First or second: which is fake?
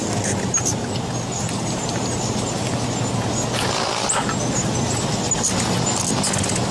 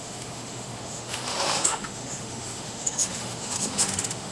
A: second